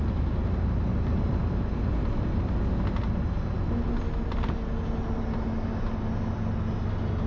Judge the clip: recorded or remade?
recorded